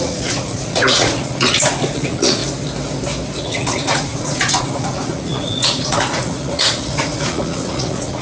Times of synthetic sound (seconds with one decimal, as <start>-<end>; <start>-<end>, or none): 0.0-2.4; 3.4-8.2